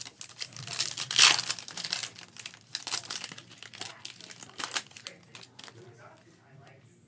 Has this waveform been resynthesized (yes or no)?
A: no